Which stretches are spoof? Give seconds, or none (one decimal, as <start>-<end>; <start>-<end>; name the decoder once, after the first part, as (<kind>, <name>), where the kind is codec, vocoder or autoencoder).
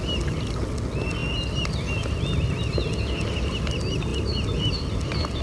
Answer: none